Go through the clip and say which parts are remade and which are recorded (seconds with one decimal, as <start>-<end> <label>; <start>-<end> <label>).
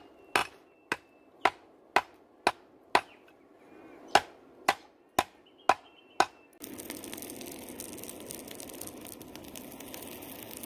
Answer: 0.0-10.7 recorded